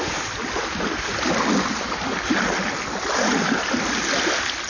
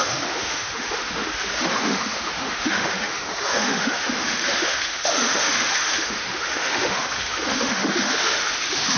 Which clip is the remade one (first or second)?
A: second